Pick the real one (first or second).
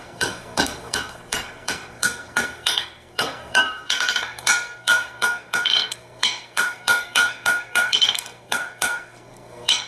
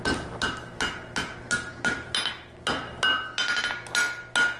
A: second